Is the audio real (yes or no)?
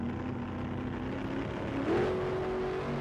yes